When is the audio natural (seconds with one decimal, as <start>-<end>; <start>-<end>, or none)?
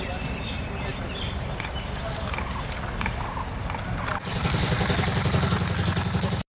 0.0-0.9; 1.7-4.1; 5.3-6.5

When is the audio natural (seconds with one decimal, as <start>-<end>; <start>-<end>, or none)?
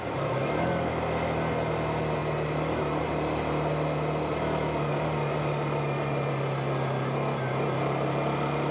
0.0-8.7